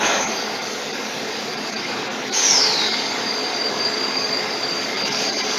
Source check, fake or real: fake